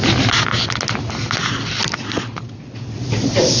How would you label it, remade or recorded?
recorded